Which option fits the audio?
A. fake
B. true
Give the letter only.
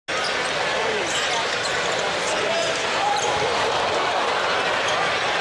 B